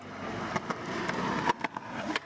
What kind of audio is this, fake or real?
real